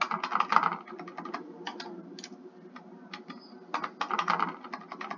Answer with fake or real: real